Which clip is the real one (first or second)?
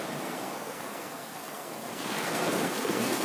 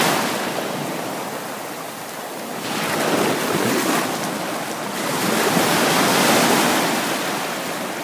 second